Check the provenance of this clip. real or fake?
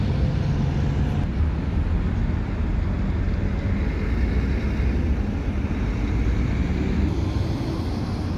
real